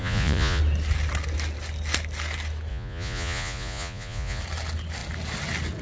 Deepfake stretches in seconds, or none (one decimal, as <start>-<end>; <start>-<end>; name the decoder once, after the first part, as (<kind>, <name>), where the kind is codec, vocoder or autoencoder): 0.0-0.6 (vocoder, Vocos); 2.7-4.4